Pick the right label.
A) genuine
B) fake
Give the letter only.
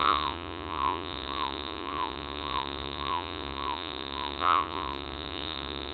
B